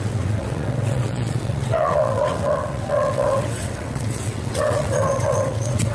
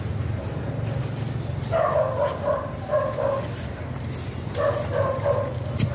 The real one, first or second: second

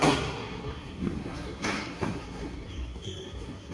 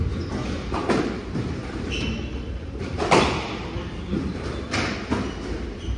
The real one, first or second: second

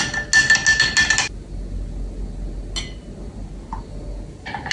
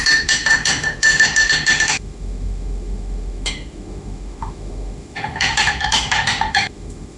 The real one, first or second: first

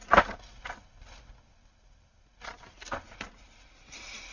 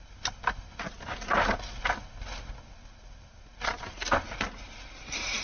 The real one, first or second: second